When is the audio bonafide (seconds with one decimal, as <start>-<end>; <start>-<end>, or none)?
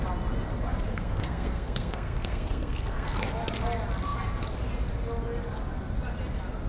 0.0-0.9; 3.3-6.7